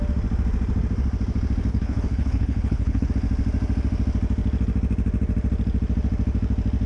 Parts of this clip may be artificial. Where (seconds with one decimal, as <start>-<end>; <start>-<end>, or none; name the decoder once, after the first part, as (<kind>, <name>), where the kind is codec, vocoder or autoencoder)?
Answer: 1.7-3.1 (codec, HILCodec)

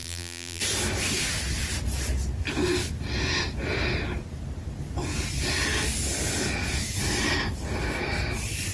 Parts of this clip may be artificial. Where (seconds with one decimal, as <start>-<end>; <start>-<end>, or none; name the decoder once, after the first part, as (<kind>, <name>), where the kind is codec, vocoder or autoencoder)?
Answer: 0.0-0.6 (vocoder, BigVGAN v2)